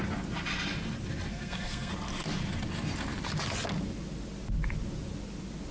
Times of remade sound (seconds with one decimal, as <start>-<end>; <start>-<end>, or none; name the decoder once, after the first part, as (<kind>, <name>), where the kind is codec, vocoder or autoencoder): 1.3-1.9 (codec, SNAC)